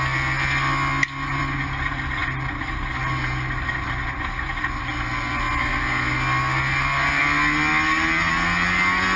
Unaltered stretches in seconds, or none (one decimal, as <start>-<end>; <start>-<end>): 0.0-9.2